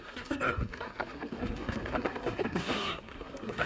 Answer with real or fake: fake